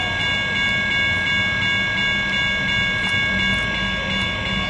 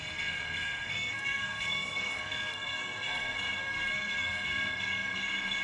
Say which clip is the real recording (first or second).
first